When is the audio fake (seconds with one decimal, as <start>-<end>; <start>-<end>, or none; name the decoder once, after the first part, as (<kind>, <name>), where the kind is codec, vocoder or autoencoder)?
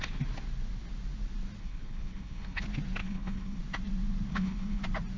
1.6-2.6 (codec, HILCodec); 3.0-3.6; 4.3-4.8